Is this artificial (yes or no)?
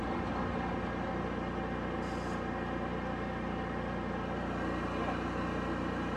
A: no